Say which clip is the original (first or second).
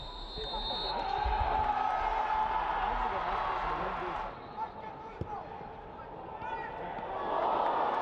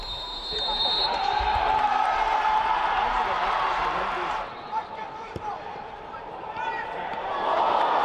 first